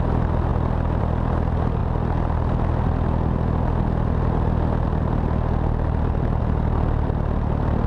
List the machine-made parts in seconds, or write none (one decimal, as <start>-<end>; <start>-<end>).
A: none